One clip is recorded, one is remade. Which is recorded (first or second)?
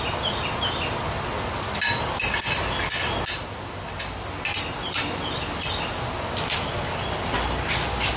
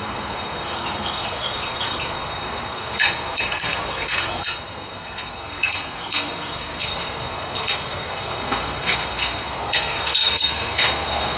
first